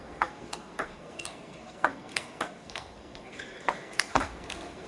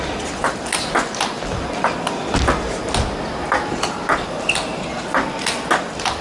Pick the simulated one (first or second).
first